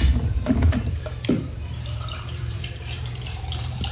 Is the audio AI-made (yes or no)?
yes